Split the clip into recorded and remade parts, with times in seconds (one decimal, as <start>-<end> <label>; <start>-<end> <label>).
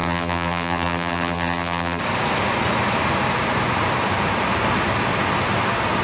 0.0-2.0 remade; 2.0-6.0 recorded